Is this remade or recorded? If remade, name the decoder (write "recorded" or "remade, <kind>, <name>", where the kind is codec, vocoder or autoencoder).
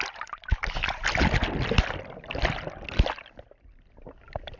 recorded